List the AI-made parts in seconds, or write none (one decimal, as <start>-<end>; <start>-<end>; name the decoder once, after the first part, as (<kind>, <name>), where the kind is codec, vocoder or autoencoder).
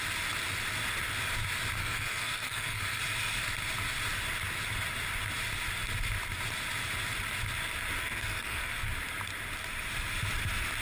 1.8-3.0 (codec, SNAC); 8.0-8.9